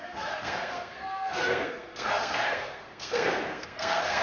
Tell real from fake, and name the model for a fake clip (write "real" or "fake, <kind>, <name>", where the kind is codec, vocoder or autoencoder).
fake, codec, SNAC